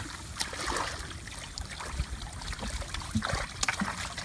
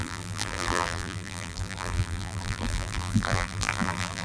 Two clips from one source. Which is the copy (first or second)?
second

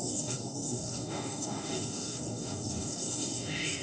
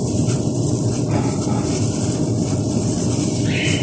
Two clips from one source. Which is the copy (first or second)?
first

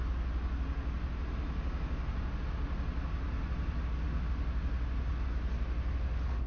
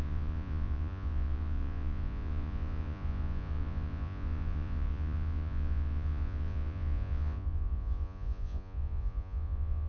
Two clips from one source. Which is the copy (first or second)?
second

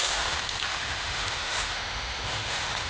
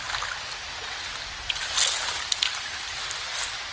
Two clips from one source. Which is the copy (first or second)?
first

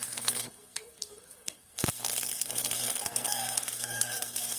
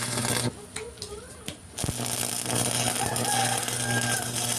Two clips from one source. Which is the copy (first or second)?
first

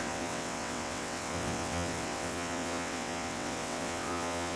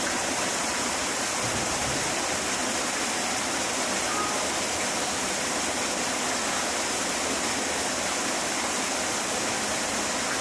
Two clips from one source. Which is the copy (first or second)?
first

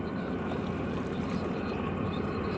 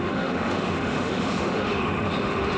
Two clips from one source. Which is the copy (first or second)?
second